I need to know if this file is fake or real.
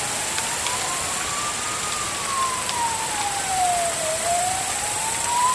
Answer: fake